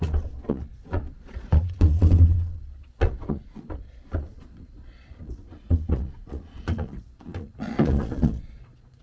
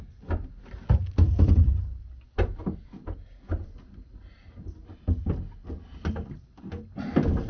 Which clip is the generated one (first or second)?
first